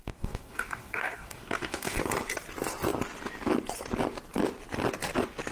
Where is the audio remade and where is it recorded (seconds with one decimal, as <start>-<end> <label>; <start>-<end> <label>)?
0.0-2.0 remade; 2.0-5.5 recorded